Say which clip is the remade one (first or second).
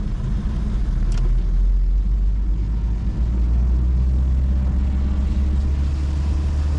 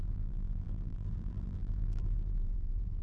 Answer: second